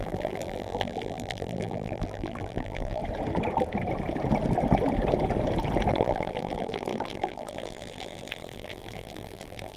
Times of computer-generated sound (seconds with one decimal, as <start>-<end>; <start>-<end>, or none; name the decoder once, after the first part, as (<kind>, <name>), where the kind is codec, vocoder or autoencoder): 0.0-3.0 (vocoder, BigVGAN v2); 5.9-9.8